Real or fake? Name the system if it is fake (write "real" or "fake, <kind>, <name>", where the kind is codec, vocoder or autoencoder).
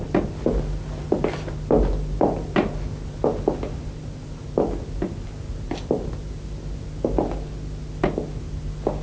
real